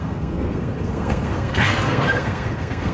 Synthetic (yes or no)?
yes